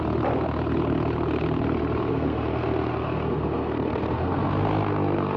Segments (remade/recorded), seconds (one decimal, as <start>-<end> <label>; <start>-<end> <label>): 0.0-2.1 recorded; 2.1-5.4 remade